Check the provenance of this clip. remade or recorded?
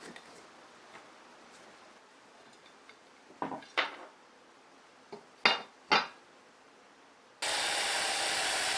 recorded